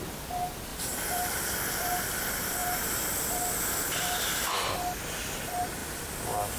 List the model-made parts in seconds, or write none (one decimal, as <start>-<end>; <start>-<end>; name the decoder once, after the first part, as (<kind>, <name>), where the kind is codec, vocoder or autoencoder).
0.7-1.6 (vocoder, BigVGAN v2); 5.8-6.6